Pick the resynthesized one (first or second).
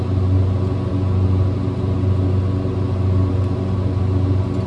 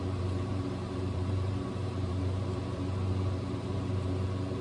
second